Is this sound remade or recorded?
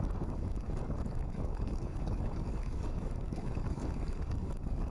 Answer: remade